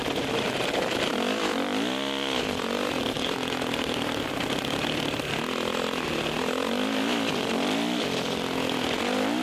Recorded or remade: recorded